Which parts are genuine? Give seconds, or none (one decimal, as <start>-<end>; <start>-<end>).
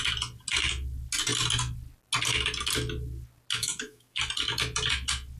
0.0-3.6; 4.2-5.4